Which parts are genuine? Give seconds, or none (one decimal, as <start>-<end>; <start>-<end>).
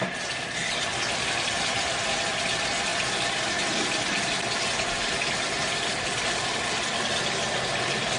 0.0-8.2